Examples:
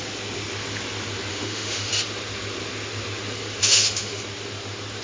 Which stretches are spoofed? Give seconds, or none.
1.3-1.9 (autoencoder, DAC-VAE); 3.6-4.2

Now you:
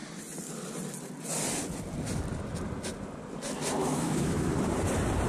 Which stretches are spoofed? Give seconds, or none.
3.8-4.5 (autoencoder, DAC-VAE)

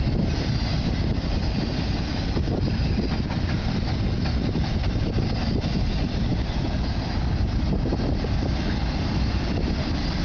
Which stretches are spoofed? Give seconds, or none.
none

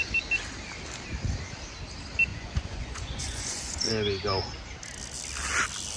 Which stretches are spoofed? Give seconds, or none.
2.3-3.9 (vocoder, Vocos)

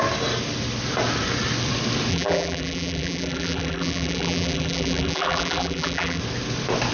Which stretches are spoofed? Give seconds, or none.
2.1-6.2 (vocoder, BigVGAN v2)

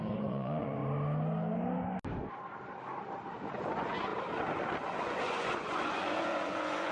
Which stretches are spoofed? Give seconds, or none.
0.0-0.8 (vocoder, Vocos); 3.4-4.1; 5.0-6.9

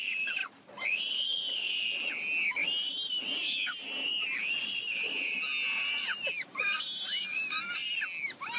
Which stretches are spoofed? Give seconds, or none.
none